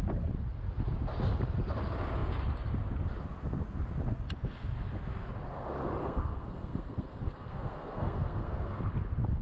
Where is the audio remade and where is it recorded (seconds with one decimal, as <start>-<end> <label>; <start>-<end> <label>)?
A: 0.0-6.0 recorded; 6.0-8.8 remade; 8.8-9.4 recorded